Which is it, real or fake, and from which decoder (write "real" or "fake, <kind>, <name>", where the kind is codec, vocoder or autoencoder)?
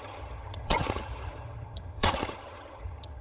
fake, vocoder, HiFi-GAN